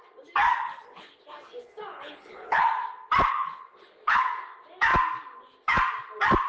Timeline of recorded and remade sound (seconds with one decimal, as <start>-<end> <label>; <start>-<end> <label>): 0.0-0.6 recorded; 0.6-1.2 remade; 1.2-1.9 recorded; 1.9-2.6 remade; 2.6-3.3 recorded; 3.3-4.2 remade; 4.2-6.5 recorded

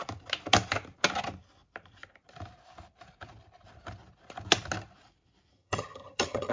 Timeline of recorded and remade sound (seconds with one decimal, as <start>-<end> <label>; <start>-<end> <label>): 0.0-5.5 recorded; 5.5-6.5 remade

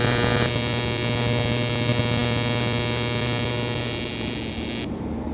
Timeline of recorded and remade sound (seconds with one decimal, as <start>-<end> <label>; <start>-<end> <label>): 0.0-5.3 recorded

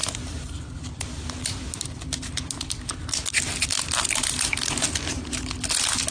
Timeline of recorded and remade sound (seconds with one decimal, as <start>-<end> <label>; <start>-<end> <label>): 0.0-6.1 recorded

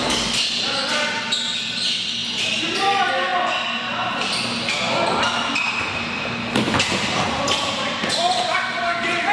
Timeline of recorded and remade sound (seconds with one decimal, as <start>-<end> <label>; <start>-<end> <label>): 0.0-9.3 recorded